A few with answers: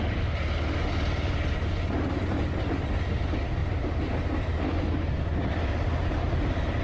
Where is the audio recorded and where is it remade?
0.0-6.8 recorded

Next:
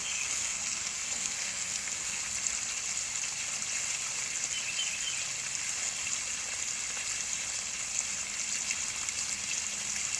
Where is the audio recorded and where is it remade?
0.0-2.2 remade; 2.2-10.2 recorded